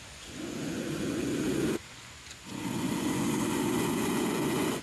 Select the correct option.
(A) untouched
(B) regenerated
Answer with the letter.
B